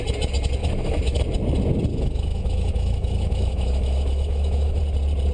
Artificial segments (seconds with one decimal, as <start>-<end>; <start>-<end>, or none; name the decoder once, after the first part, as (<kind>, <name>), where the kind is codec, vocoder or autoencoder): 0.6-1.2 (autoencoder, DAC-VAE); 1.9-4.8